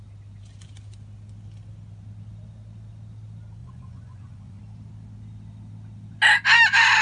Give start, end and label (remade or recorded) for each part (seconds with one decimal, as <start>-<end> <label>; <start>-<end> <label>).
0.0-3.6 recorded; 3.6-4.6 remade; 4.6-7.0 recorded